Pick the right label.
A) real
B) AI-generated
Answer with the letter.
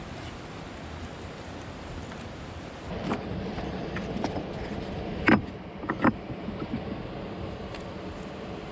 A